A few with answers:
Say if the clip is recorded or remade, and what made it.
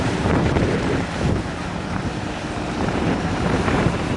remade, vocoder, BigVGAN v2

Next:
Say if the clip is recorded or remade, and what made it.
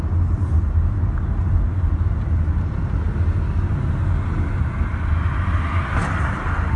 recorded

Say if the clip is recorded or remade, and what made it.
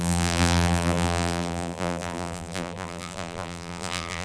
remade, vocoder, BigVGAN v2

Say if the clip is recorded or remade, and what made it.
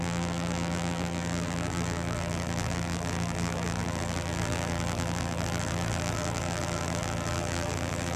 remade, vocoder, BigVGAN v2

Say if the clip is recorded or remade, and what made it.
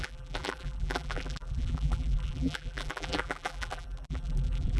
remade, vocoder, BigVGAN v2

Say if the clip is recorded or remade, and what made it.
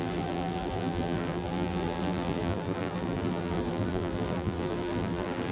remade, vocoder, BigVGAN v2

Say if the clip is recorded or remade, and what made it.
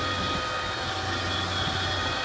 recorded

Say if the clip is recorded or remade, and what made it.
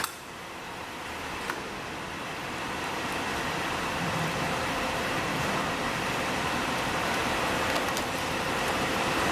remade, vocoder, BigVGAN v2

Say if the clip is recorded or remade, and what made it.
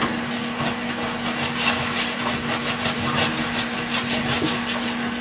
recorded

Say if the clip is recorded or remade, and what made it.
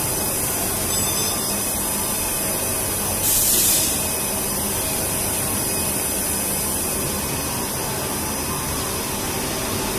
recorded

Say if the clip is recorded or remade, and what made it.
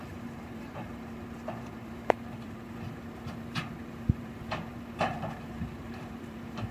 remade, vocoder, BigVGAN v2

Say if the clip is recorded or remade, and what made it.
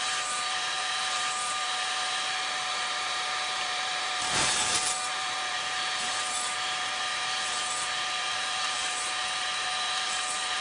remade, vocoder, BigVGAN v2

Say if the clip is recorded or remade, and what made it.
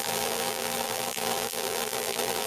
remade, vocoder, BigVGAN v2